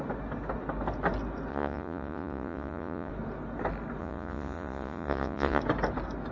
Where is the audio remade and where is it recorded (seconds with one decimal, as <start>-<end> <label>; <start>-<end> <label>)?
0.0-1.5 recorded; 1.5-3.1 remade; 3.1-4.0 recorded; 4.0-5.6 remade; 5.6-6.3 recorded

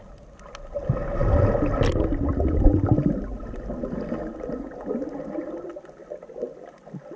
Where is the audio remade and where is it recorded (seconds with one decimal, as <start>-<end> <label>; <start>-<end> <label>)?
0.0-7.2 recorded

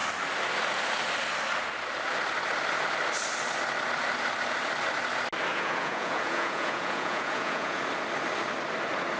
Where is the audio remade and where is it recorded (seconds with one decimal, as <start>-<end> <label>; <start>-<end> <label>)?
0.0-5.5 recorded; 5.5-7.8 remade; 7.8-9.2 recorded

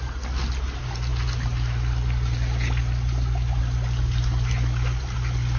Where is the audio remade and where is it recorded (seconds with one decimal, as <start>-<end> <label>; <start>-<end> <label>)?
0.0-5.6 recorded

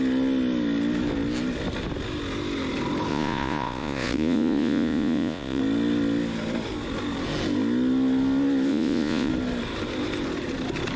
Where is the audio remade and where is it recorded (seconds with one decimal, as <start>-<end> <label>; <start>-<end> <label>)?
0.0-3.1 recorded; 3.1-5.6 remade; 5.6-8.7 recorded; 8.7-9.3 remade; 9.3-11.0 recorded

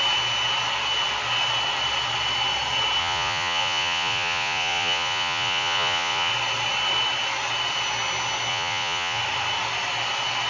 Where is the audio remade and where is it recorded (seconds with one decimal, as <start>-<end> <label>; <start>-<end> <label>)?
0.0-3.0 recorded; 3.0-6.3 remade; 6.3-8.5 recorded; 8.5-9.2 remade; 9.2-10.5 recorded

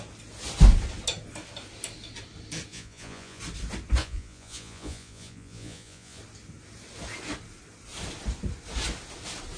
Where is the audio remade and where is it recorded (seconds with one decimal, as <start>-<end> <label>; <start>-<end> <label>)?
0.0-2.7 recorded; 2.7-3.4 remade; 3.4-4.0 recorded; 4.0-6.2 remade; 6.2-9.6 recorded

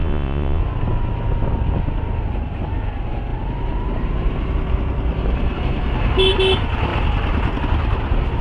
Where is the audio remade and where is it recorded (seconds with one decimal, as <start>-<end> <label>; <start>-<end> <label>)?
0.0-0.6 remade; 0.6-8.4 recorded